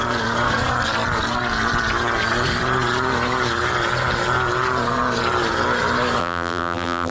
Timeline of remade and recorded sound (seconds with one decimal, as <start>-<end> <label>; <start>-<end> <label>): 0.0-6.2 recorded; 6.2-7.1 remade